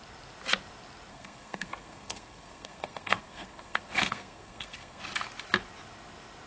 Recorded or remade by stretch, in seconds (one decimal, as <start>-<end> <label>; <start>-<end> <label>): 0.0-1.1 recorded; 1.1-5.0 remade; 5.0-6.5 recorded